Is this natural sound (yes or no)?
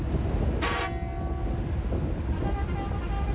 yes